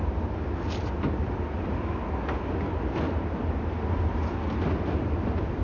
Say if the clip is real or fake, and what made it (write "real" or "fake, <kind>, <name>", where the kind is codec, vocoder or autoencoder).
real